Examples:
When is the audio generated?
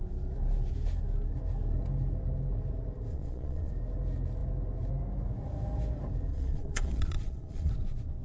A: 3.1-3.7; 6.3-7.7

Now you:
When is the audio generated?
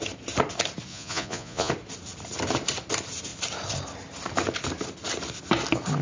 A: 0.9-1.7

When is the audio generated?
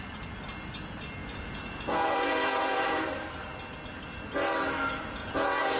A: 1.2-3.1; 5.2-5.8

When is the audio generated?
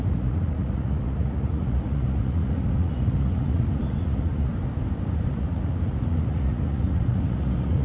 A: 0.0-4.5; 5.3-7.8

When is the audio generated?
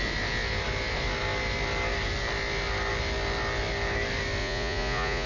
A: 4.4-5.3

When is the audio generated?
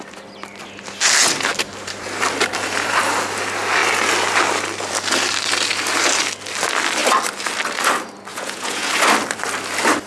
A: 8.3-8.9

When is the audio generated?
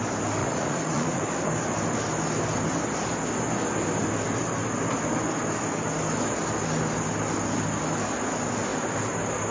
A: 0.4-1.2